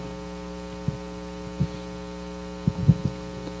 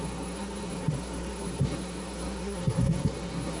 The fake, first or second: second